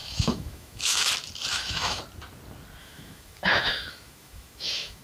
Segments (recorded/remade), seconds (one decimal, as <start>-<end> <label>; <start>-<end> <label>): 0.0-1.1 remade; 1.1-1.5 recorded; 1.5-2.0 remade; 2.0-2.8 recorded; 2.8-5.0 remade